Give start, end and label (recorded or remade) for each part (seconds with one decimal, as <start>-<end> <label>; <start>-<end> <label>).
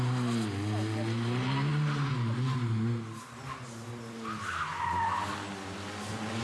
0.0-6.4 recorded